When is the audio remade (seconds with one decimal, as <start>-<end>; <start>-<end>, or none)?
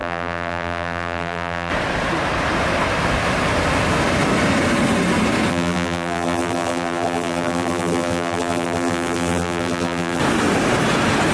0.0-1.7; 5.5-10.2